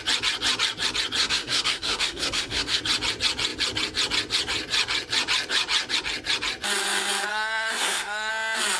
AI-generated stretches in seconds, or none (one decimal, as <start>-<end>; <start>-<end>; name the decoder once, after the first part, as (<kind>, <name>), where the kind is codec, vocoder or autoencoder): 1.2-2.8 (codec, SNAC); 7.3-8.3